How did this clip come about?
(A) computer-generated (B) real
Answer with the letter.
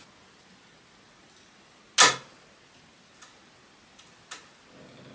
B